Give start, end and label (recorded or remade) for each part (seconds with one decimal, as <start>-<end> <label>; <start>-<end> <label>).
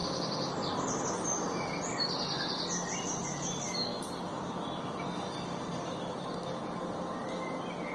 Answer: 0.0-1.7 remade; 1.7-7.9 recorded